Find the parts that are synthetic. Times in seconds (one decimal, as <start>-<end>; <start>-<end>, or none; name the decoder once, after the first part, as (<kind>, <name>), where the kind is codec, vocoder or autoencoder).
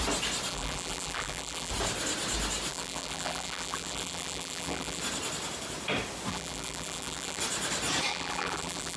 0.5-1.7 (vocoder, BigVGAN v2); 2.7-5.0; 6.3-7.4; 8.1-9.0